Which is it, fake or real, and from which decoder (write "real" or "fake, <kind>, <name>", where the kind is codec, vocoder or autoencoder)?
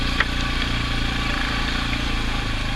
real